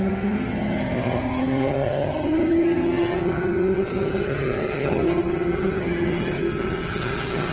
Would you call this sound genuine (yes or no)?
no